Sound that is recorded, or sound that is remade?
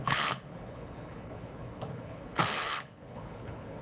remade